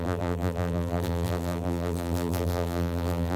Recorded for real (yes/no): no